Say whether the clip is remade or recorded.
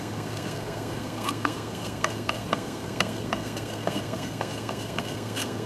remade